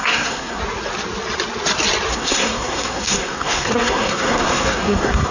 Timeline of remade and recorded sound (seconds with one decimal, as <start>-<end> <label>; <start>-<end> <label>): 0.0-0.6 remade; 0.6-2.1 recorded; 2.1-5.3 remade